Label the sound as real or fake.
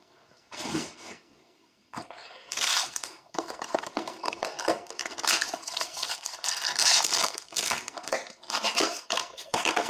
fake